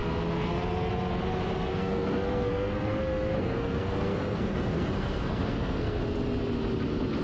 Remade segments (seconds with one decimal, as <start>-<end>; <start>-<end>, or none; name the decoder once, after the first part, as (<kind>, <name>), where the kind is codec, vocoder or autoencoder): 1.7-6.0 (codec, SNAC)